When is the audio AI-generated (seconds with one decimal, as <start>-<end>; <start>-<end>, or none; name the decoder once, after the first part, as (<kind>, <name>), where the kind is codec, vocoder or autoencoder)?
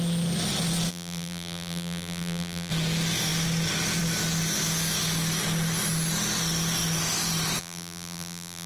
0.9-2.7 (vocoder, BigVGAN v2); 7.6-8.7